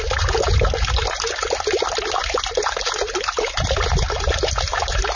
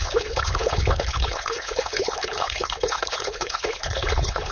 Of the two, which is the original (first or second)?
first